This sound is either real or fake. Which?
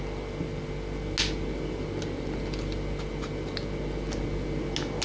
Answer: real